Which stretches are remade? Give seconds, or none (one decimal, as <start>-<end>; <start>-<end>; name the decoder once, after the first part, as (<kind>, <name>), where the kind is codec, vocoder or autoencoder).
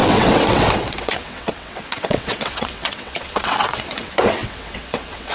0.0-5.3 (vocoder, WaveNeXt)